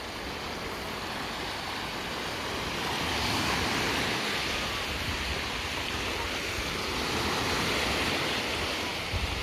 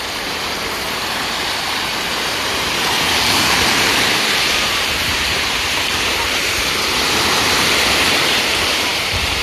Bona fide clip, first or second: first